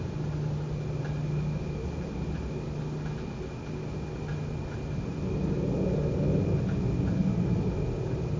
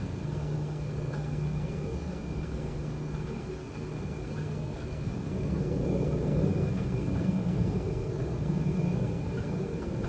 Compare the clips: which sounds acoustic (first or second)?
first